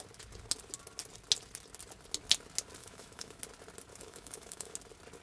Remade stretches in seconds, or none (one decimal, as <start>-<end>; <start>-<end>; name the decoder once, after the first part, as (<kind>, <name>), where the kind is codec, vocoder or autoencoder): 2.8-3.4 (autoencoder, DAC-VAE); 3.9-4.7